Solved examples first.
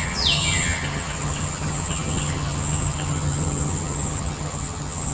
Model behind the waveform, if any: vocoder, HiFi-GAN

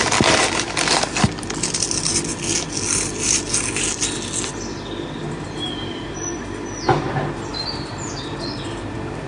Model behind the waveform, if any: none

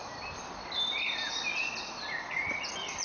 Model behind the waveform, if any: none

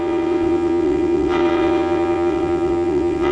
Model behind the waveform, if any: vocoder, WaveNeXt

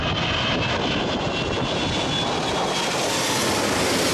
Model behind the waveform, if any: none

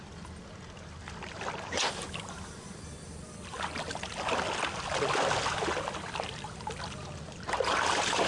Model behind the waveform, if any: none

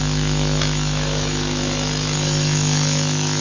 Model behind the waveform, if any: autoencoder, DAC-VAE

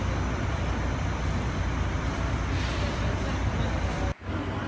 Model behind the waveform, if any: none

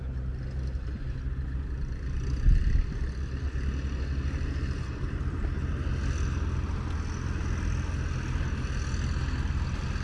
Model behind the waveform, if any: none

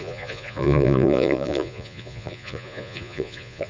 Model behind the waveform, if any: vocoder, Vocos